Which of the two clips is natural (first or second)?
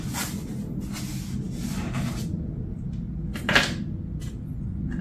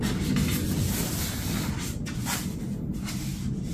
first